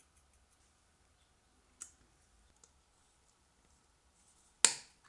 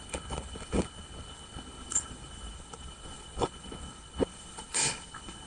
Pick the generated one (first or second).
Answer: second